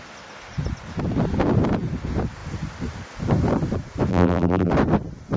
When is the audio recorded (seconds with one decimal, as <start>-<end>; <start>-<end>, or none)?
0.0-4.1; 4.7-5.4